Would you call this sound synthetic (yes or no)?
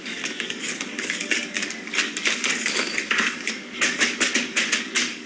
yes